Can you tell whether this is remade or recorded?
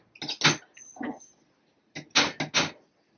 recorded